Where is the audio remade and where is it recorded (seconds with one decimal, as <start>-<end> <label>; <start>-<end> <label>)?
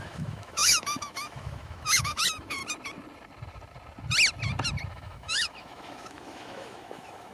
0.0-2.6 remade; 2.6-4.9 recorded; 4.9-7.3 remade